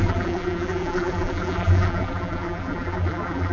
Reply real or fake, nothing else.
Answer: fake